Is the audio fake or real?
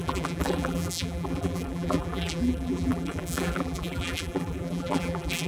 fake